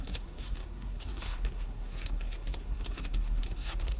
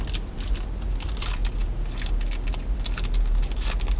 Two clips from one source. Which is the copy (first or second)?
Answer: first